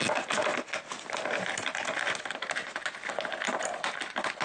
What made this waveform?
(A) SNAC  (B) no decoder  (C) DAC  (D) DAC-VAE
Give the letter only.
B